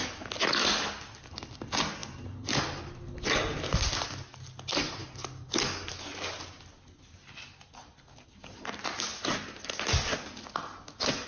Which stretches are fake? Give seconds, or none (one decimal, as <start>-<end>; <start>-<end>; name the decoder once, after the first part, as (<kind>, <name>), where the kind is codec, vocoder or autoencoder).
none